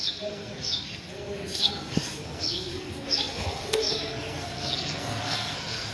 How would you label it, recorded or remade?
remade